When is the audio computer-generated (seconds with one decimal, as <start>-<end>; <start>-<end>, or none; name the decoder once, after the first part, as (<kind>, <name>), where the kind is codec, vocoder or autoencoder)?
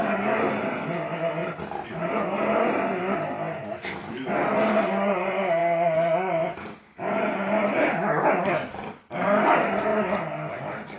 none